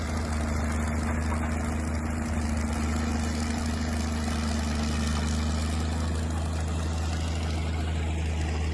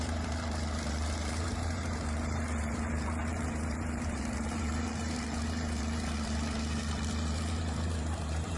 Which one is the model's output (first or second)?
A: second